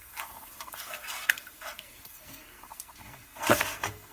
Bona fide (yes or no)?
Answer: no